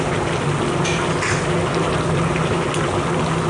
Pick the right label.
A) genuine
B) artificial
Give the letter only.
A